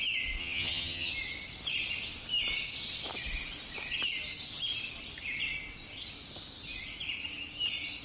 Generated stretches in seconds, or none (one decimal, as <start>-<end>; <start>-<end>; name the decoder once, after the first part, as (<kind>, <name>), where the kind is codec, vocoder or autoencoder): 0.4-1.1 (vocoder, HiFi-GAN)